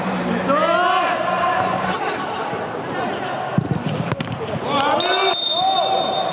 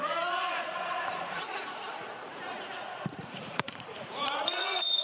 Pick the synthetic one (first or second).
second